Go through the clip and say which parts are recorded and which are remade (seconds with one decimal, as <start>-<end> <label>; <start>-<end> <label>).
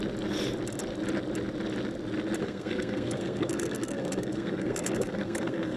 0.0-2.4 recorded; 2.4-5.8 remade